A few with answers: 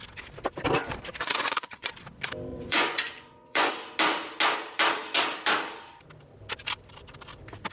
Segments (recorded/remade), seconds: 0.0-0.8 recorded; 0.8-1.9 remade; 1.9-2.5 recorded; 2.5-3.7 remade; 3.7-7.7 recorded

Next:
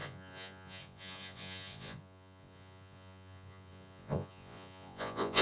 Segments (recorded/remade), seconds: 0.0-5.4 remade

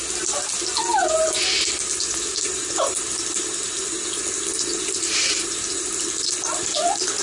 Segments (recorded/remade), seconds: 0.0-7.2 recorded

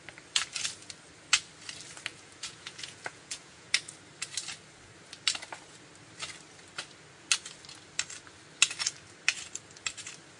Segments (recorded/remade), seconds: 0.0-2.1 recorded; 2.1-3.7 remade; 3.7-10.4 recorded